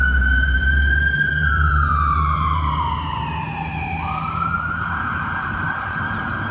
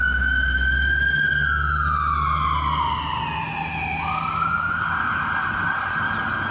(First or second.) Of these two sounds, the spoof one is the first